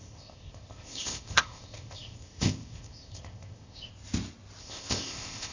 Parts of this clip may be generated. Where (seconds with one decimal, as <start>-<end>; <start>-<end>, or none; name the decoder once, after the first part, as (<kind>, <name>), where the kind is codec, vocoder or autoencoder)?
0.0-3.9 (codec, ZipCodec); 4.6-5.5

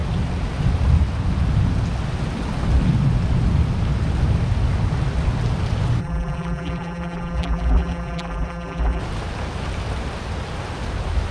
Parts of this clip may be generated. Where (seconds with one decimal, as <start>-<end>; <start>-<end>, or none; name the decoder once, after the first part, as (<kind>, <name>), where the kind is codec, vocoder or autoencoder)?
6.0-9.0 (vocoder, BigVGAN v2)

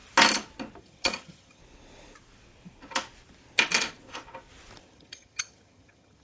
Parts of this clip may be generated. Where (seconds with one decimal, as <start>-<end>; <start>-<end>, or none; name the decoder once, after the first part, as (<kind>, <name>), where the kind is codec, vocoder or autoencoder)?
0.8-1.6 (vocoder, HiFi-GAN); 4.8-6.2

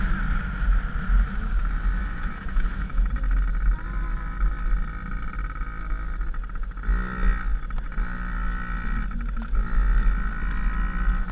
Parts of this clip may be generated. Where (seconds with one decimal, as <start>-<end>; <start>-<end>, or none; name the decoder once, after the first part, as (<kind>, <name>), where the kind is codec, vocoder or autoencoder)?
2.0-3.1 (autoencoder, DAC-VAE)